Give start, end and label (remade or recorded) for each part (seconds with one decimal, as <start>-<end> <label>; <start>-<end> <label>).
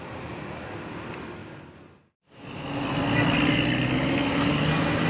0.0-5.1 recorded